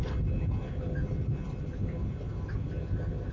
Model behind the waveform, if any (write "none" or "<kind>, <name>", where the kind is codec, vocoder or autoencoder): none